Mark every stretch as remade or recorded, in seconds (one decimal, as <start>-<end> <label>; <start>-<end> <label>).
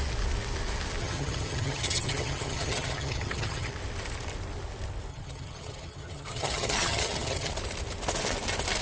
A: 0.0-1.0 recorded; 1.0-3.7 remade; 3.7-5.1 recorded; 5.1-7.5 remade; 7.5-8.8 recorded